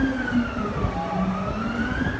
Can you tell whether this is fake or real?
real